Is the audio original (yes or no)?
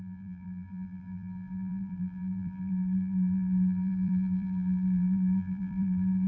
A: no